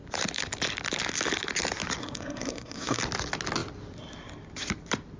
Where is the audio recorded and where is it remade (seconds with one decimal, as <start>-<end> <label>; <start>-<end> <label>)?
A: 0.0-2.0 recorded; 2.0-3.0 remade; 3.0-5.2 recorded